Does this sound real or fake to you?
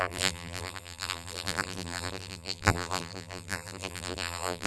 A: fake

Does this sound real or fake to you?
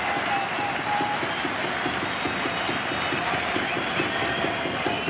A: real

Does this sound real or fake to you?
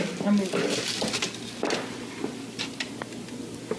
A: real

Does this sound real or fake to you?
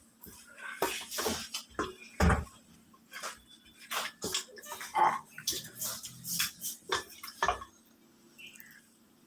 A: real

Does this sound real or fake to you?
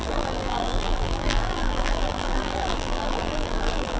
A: fake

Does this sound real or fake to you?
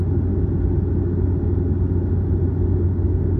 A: real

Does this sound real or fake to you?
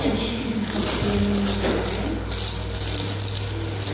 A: real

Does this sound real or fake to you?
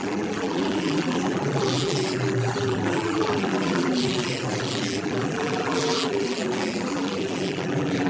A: fake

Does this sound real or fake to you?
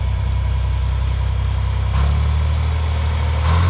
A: real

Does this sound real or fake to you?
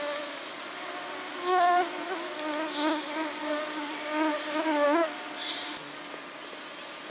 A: real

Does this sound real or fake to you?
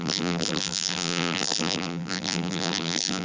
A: fake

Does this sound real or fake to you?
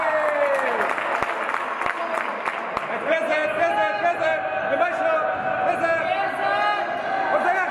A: real